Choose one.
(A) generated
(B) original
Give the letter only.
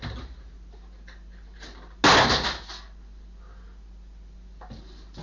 B